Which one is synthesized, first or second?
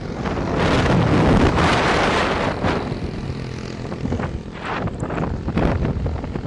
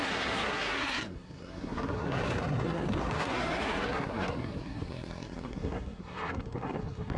second